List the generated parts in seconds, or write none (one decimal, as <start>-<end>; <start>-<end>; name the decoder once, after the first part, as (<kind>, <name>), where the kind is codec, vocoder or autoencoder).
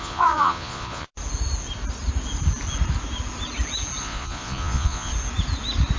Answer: 0.0-1.1 (vocoder, Vocos); 4.0-5.1